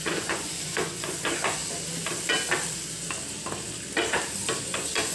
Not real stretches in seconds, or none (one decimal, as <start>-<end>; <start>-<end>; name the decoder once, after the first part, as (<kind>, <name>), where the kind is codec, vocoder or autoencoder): 0.0-1.6 (vocoder, Vocos); 4.6-5.1